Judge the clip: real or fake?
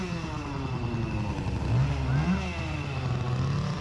real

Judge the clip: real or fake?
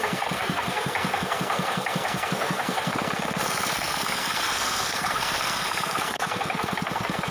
fake